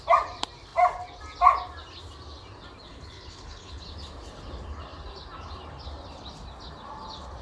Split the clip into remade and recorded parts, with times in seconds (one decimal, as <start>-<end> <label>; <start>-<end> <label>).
0.0-2.9 recorded; 2.9-3.8 remade; 3.8-7.4 recorded